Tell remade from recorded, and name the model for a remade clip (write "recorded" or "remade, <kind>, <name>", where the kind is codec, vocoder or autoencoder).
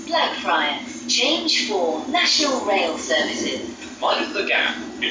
recorded